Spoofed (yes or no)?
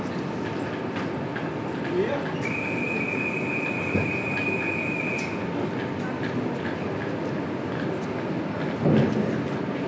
no